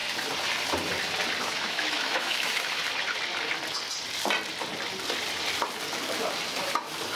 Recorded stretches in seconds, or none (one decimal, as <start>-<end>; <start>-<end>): 0.0-1.4; 2.8-7.2